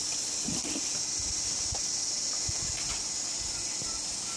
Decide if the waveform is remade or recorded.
recorded